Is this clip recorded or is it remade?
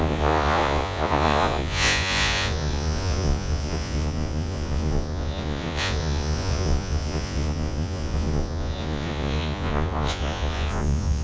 remade